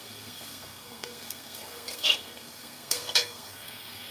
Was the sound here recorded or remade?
remade